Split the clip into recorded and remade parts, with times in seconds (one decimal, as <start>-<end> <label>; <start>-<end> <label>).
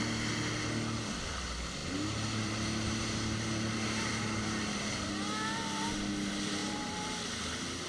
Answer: 0.0-1.8 recorded; 1.8-5.1 remade; 5.1-6.6 recorded; 6.6-7.3 remade; 7.3-7.9 recorded